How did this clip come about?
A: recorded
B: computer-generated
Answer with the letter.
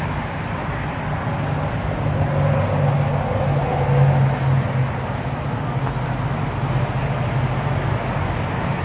A